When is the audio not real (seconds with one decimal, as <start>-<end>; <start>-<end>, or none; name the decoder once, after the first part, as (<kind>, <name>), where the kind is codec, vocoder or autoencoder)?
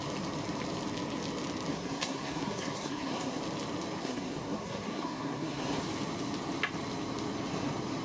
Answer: 1.7-3.4 (codec, SNAC); 4.0-5.8